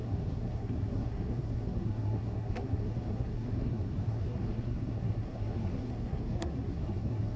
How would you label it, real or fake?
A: fake